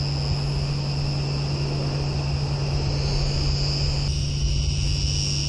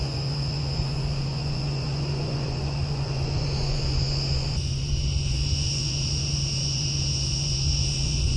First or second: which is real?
first